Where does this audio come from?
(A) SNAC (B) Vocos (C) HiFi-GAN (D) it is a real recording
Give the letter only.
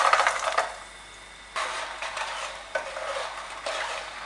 D